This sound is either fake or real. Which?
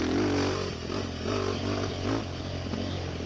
real